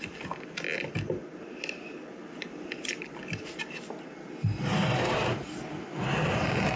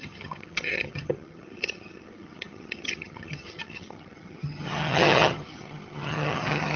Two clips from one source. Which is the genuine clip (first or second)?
first